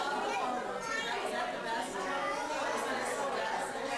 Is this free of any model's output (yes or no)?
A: yes